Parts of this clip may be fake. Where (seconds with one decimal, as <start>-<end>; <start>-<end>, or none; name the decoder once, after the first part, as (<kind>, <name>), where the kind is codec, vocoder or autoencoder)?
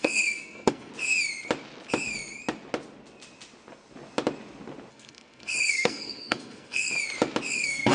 0.0-0.9 (codec, SNAC); 4.9-6.9; 7.5-7.9